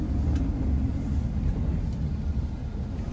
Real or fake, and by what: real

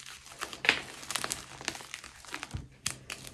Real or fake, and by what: real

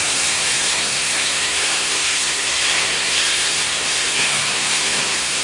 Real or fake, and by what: fake, codec, SNAC